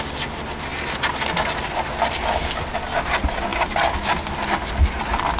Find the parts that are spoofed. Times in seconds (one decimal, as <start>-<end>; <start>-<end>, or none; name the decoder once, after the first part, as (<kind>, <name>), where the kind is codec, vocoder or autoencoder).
none